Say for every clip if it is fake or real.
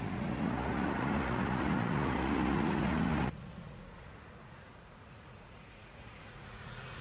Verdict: fake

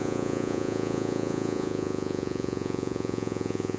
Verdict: fake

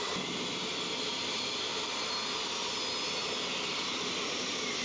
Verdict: real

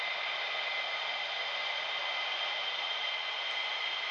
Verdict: real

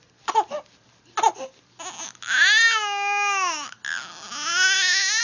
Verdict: real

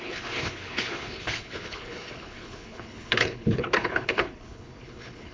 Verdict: fake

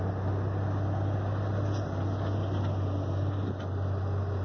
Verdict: real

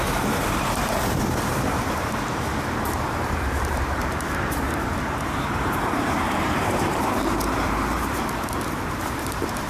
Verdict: fake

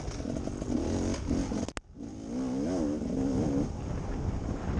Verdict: real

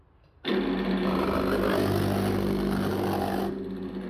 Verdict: real